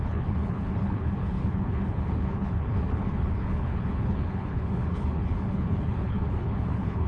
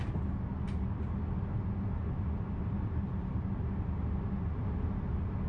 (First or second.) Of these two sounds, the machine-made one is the first